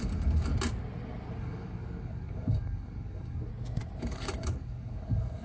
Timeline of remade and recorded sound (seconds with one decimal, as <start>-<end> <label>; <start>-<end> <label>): 0.0-0.5 remade; 0.5-1.4 recorded; 1.4-3.5 remade; 3.5-4.0 recorded; 4.0-5.4 remade